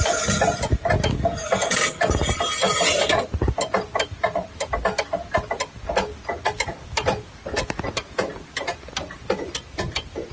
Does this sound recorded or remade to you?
recorded